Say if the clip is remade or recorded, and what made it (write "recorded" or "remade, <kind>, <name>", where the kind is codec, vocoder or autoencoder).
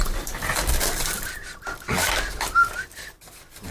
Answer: recorded